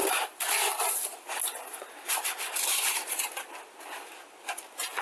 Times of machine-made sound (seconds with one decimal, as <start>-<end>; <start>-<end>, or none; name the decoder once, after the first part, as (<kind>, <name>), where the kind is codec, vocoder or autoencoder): 0.0-0.7 (vocoder, BigVGAN v2); 2.7-3.5